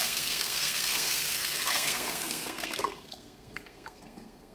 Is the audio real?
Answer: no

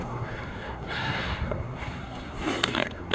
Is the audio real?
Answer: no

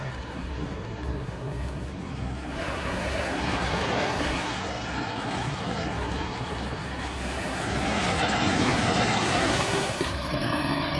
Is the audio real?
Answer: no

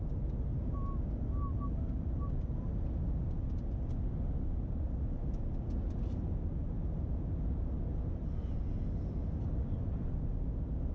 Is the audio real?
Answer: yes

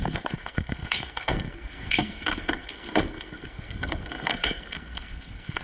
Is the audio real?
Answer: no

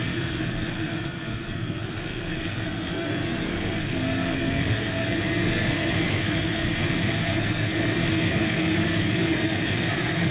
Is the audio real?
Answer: no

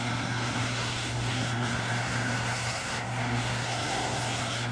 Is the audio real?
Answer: no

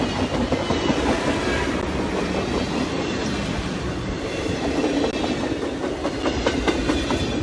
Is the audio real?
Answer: yes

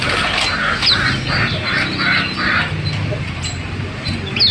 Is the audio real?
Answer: yes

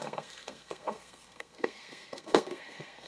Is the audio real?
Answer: no